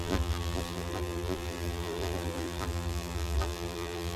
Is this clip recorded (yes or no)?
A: no